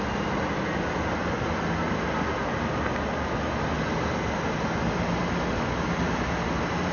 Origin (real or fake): real